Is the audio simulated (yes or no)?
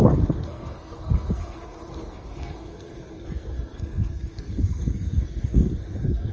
yes